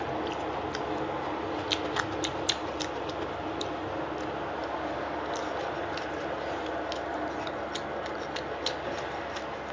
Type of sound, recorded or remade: recorded